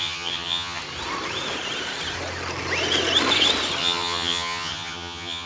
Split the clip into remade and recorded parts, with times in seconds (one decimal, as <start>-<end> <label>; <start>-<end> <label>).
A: 0.0-0.8 remade; 0.8-3.8 recorded; 3.8-5.5 remade